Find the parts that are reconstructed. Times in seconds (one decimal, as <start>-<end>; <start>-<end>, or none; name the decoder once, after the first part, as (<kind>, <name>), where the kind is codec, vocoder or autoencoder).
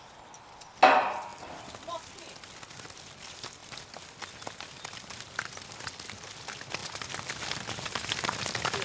none